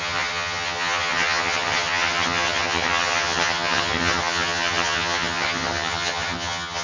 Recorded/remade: remade